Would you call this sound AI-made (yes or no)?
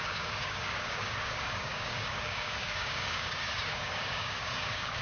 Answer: yes